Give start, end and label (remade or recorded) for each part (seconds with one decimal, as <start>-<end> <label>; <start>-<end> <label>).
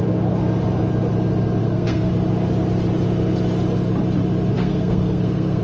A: 0.0-1.6 recorded; 1.6-2.1 remade; 2.1-4.5 recorded; 4.5-5.6 remade